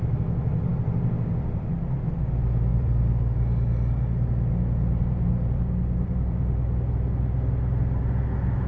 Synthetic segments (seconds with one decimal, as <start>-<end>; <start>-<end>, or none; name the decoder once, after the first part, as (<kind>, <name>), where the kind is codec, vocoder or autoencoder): 2.7-6.9 (vocoder, BigVGAN v2)

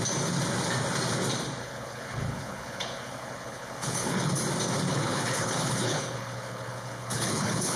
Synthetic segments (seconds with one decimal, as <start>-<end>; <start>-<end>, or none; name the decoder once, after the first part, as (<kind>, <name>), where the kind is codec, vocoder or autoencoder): 1.6-4.4 (codec, HILCodec); 4.9-7.8

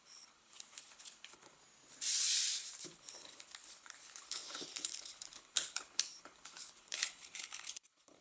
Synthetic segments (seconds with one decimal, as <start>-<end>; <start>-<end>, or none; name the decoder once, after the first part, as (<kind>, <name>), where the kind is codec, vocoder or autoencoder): 0.0-1.6 (codec, HILCodec); 2.8-8.2

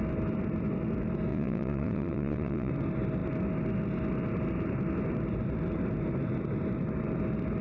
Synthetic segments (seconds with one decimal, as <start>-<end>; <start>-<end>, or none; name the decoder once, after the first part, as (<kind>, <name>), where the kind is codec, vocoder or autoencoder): 1.3-2.7 (vocoder, Vocos)

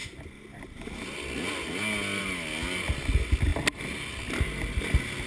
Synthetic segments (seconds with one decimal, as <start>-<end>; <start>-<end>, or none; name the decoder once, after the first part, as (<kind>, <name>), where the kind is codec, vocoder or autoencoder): none